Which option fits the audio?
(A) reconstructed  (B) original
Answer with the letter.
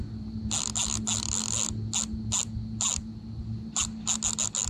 B